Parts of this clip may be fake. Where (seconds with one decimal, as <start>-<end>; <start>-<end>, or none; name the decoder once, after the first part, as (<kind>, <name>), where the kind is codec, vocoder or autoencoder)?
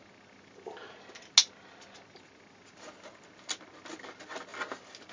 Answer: none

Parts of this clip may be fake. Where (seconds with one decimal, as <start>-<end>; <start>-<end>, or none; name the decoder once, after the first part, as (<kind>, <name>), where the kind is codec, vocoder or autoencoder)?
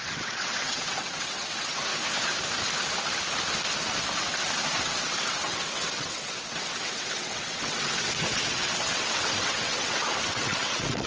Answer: 0.0-1.9 (vocoder, WaveNeXt); 4.9-11.1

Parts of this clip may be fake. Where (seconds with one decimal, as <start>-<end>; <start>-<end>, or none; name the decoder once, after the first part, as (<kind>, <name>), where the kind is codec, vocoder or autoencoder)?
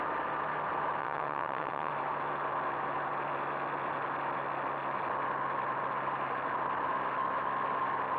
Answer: 1.0-1.9 (vocoder, WaveNeXt)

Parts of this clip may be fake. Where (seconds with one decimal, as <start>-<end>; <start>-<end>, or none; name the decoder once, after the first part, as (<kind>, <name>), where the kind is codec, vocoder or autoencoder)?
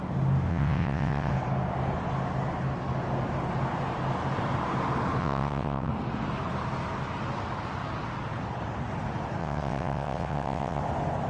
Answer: 0.5-1.3 (vocoder, WaveNeXt); 5.2-5.9; 9.4-10.8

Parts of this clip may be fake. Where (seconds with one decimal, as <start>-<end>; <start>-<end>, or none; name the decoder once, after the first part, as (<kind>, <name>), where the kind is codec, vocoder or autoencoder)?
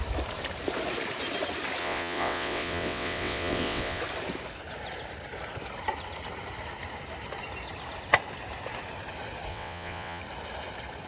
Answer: 1.8-4.0 (vocoder, WaveNeXt); 9.5-10.2